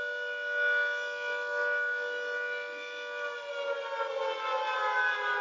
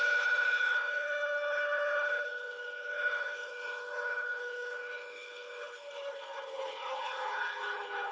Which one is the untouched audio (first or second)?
first